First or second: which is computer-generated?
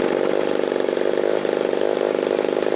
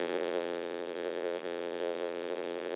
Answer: second